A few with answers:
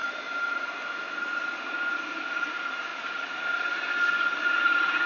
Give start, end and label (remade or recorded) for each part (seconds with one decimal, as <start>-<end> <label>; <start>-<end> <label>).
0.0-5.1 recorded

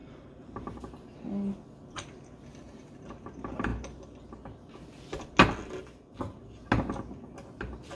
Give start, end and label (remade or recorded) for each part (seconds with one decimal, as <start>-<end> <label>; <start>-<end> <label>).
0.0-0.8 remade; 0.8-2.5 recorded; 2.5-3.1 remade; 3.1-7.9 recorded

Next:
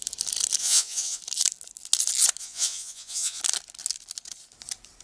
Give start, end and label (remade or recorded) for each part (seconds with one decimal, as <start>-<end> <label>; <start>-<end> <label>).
0.0-0.6 recorded; 0.6-1.2 remade; 1.2-2.4 recorded; 2.4-3.4 remade; 3.4-5.0 recorded

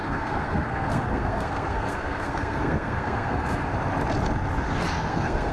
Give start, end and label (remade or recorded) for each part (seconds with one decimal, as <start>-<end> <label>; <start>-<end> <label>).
0.0-3.6 remade; 3.6-5.1 recorded; 5.1-5.5 remade

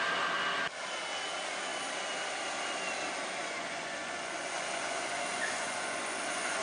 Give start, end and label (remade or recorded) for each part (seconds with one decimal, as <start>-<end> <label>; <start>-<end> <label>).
0.0-3.4 recorded; 3.4-6.6 remade